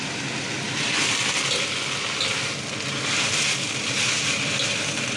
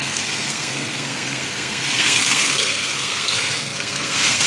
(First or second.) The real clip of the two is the first